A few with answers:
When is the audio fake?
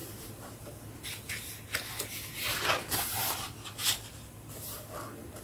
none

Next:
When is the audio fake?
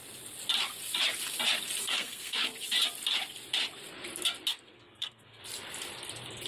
1.8-2.4 (codec, SNAC); 4.5-5.4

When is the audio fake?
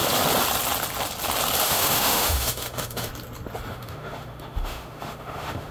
1.6-3.1 (autoencoder, DAC-VAE); 3.7-5.7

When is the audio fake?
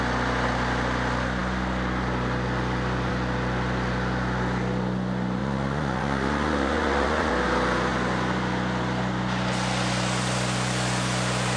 5.4-7.3 (vocoder, Vocos)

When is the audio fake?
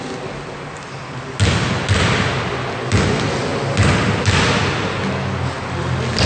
none